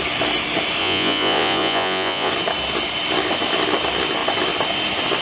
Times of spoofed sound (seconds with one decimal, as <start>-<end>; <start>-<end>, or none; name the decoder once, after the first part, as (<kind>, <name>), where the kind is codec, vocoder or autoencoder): 0.8-2.3 (vocoder, Vocos)